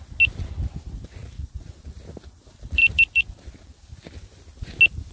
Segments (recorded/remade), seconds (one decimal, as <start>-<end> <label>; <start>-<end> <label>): 0.0-1.2 recorded; 1.2-1.7 remade; 1.7-5.1 recorded